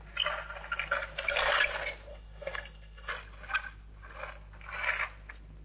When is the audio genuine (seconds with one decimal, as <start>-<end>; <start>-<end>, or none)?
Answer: 0.0-2.1; 3.1-5.6